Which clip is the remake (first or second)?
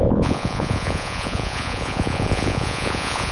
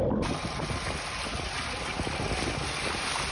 first